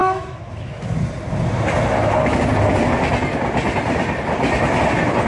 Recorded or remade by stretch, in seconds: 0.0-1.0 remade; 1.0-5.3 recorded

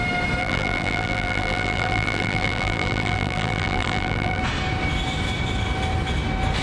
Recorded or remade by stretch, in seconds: 0.0-0.4 recorded; 0.4-4.4 remade; 4.4-6.6 recorded

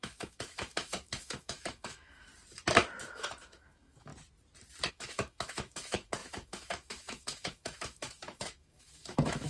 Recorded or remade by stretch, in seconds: 0.0-2.3 remade; 2.3-3.0 recorded; 3.0-4.1 remade; 4.1-4.9 recorded; 4.9-9.5 remade